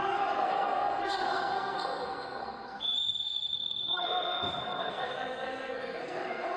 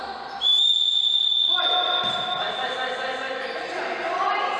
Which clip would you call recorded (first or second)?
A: second